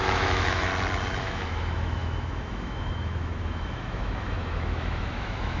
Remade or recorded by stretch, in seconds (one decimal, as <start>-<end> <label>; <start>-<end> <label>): 0.0-0.7 remade; 0.7-1.2 recorded; 1.2-5.6 remade